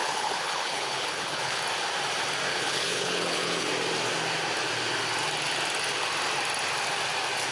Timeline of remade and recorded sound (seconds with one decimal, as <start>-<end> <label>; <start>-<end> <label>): 0.0-1.6 remade; 1.6-2.5 recorded; 2.5-3.7 remade; 3.7-7.5 recorded